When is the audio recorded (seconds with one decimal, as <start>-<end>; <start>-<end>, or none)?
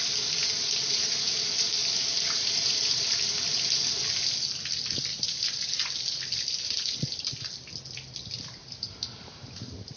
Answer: 0.0-0.4; 3.0-5.1; 5.7-8.6